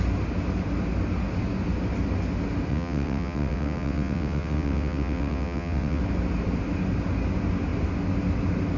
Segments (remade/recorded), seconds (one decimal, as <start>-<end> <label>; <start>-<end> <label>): 0.0-2.7 recorded; 2.7-6.0 remade; 6.0-8.8 recorded

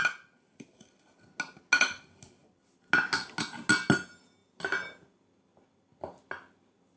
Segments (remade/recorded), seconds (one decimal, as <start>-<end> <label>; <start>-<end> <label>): 0.0-7.0 recorded

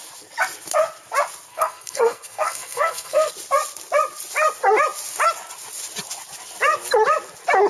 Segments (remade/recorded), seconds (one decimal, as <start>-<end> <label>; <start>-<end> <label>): 0.0-1.5 recorded; 1.5-3.3 remade; 3.3-7.7 recorded

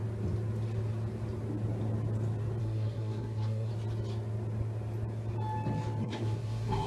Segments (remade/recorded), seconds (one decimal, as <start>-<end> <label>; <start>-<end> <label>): 0.0-2.6 recorded; 2.6-3.7 remade; 3.7-6.0 recorded; 6.0-6.9 remade

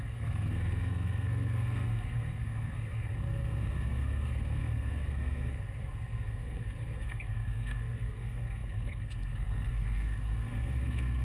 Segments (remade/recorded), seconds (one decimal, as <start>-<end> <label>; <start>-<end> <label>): 0.0-11.2 remade

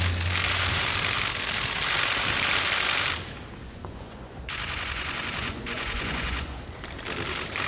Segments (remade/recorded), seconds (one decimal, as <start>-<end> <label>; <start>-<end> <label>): 0.0-3.6 recorded; 3.6-6.6 remade; 6.6-7.7 recorded

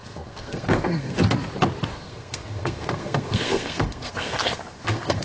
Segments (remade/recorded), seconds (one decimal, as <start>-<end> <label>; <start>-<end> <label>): 0.0-1.2 remade; 1.2-1.9 recorded; 1.9-5.2 remade